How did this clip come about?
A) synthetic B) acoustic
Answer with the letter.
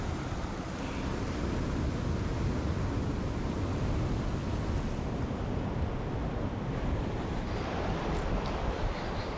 B